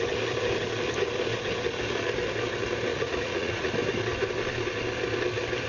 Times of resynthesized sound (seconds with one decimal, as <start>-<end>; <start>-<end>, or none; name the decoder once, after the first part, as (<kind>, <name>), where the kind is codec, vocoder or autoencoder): 2.9-3.7 (vocoder, Vocos)